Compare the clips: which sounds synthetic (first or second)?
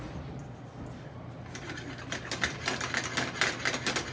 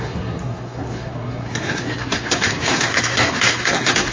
second